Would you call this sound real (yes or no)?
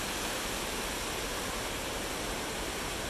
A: yes